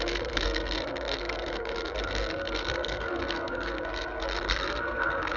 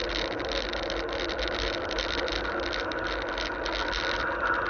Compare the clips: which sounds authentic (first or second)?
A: second